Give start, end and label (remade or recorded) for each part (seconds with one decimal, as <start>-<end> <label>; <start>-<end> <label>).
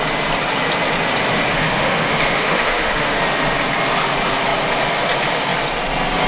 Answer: 0.0-1.5 recorded; 1.5-3.2 remade; 3.2-6.3 recorded